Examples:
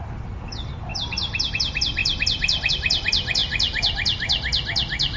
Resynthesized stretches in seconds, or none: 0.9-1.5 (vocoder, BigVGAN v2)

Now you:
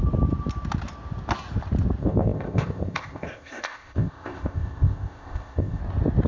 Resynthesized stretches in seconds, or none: 2.0-5.8 (codec, ZipCodec)

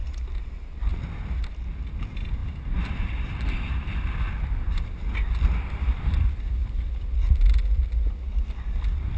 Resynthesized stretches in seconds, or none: none

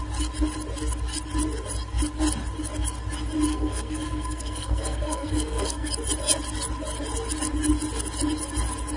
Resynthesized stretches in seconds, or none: 3.5-5.9 (codec, SNAC)

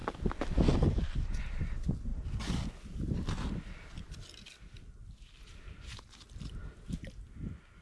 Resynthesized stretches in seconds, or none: none